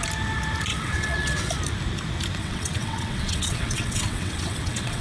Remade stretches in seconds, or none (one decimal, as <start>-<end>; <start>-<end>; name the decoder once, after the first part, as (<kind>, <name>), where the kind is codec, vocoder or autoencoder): 0.7-1.5 (vocoder, WaveNeXt); 2.4-5.0